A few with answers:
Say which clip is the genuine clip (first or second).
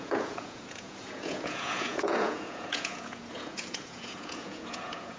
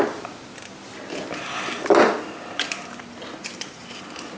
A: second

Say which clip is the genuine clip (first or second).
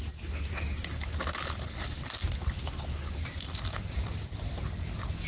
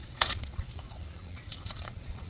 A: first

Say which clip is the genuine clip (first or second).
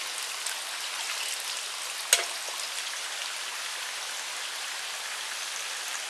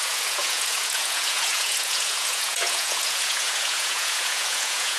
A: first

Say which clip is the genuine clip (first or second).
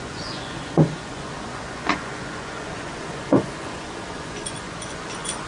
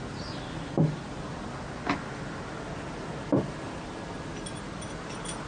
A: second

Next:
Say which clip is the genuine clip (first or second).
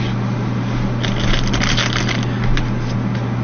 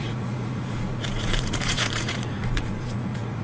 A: first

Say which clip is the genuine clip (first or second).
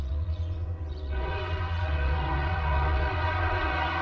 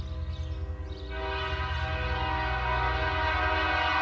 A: second